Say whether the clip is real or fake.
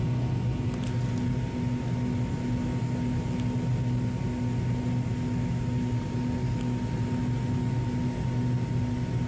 real